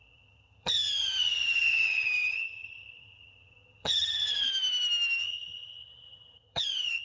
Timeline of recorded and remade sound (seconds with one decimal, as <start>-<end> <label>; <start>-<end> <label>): 0.0-4.5 remade; 4.5-5.2 recorded; 5.2-7.0 remade